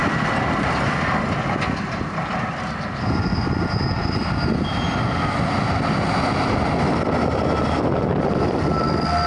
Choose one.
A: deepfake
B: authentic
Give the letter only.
B